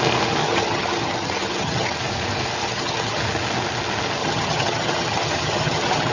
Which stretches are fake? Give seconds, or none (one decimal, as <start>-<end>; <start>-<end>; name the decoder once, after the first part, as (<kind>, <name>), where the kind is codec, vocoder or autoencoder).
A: 0.4-2.0 (vocoder, HiFi-GAN); 2.6-3.2; 4.2-6.1